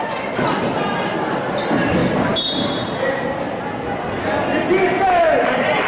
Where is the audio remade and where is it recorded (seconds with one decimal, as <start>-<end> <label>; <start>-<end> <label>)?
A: 0.0-2.0 remade; 2.0-5.5 recorded; 5.5-5.9 remade